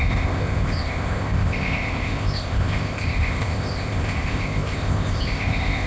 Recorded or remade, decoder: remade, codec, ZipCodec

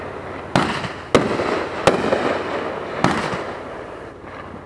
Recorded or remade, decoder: recorded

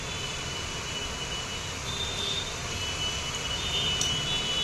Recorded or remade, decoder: recorded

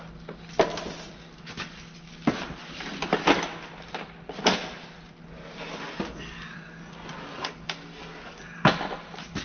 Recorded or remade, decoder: recorded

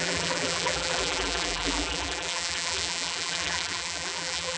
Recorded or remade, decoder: remade, vocoder, BigVGAN v2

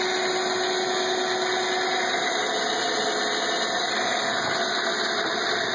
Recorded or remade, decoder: recorded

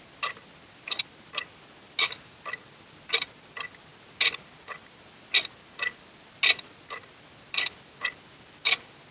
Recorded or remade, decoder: recorded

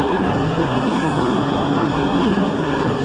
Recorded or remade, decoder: remade, codec, SNAC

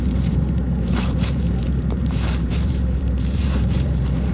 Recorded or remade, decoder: remade, vocoder, BigVGAN v2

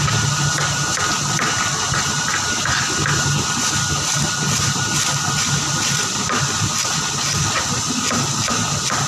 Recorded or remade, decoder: recorded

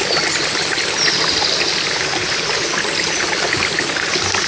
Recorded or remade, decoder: recorded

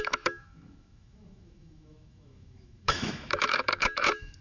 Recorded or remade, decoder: remade, autoencoder, DAC-VAE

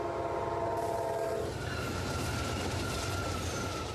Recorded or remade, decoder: remade, vocoder, BigVGAN v2